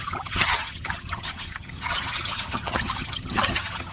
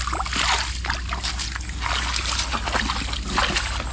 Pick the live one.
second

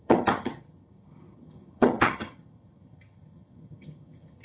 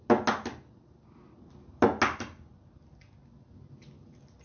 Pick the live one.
second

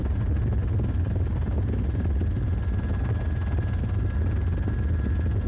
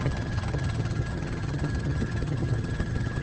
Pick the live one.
first